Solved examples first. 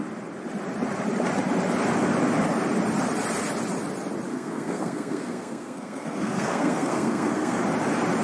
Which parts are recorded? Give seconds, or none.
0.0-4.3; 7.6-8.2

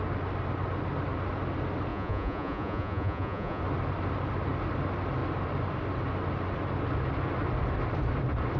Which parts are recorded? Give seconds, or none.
0.0-1.9; 3.6-8.6

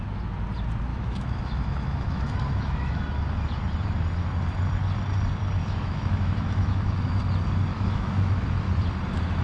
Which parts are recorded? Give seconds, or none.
0.0-0.9; 3.0-5.6; 7.2-7.7; 8.7-9.4

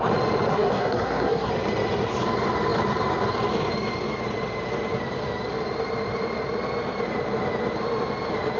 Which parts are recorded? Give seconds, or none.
0.0-0.5; 1.5-8.6